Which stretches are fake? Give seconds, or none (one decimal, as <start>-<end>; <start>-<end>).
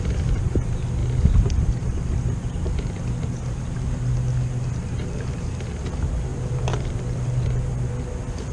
1.0-1.6; 6.3-7.7